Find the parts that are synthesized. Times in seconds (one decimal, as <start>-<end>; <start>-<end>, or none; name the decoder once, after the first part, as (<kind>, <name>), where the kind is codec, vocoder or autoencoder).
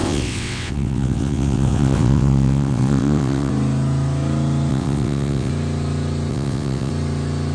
0.0-3.5 (vocoder, WaveNeXt); 4.7-5.5; 6.3-6.9